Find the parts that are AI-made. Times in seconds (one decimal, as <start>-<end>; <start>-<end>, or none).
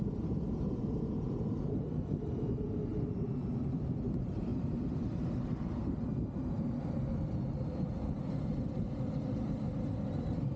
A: none